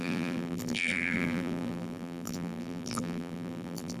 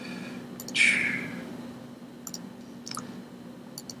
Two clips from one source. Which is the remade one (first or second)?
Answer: first